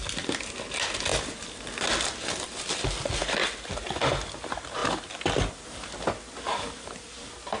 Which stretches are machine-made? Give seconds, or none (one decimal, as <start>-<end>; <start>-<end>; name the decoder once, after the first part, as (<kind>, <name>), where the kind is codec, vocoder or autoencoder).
none